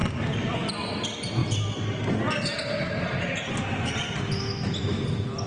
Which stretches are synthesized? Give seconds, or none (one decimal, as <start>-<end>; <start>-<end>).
0.0-0.7